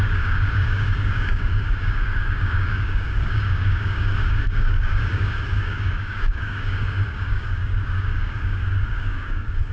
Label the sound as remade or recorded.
remade